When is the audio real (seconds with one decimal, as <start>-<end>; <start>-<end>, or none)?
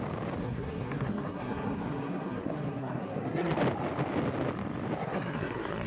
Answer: 0.0-0.4; 3.5-5.0